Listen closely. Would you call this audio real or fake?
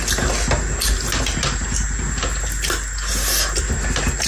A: real